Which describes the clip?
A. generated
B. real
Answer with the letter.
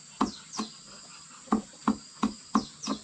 B